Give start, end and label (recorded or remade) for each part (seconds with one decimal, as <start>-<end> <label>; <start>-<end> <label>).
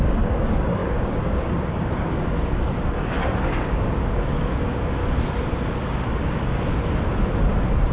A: 0.0-5.0 remade; 5.0-5.8 recorded; 5.8-6.7 remade; 6.7-7.9 recorded